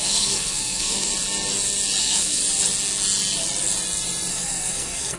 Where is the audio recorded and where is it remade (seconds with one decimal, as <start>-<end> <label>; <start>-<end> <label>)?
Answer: 0.0-1.1 remade; 1.1-2.0 recorded; 2.0-2.4 remade; 2.4-4.3 recorded; 4.3-5.2 remade